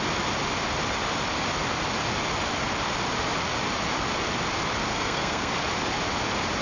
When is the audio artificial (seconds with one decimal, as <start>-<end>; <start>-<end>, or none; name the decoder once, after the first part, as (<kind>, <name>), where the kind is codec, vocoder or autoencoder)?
4.9-5.5 (codec, SNAC)